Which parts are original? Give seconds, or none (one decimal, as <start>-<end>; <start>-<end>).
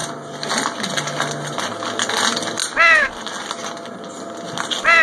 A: 0.0-5.0